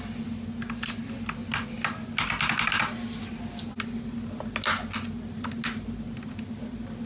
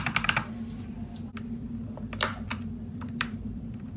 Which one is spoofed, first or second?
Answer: second